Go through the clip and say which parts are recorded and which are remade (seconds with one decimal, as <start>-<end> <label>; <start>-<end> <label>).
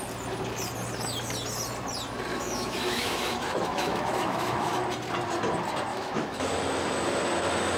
0.0-2.3 recorded; 2.3-4.8 remade; 4.8-5.9 recorded; 5.9-6.5 remade; 6.5-7.8 recorded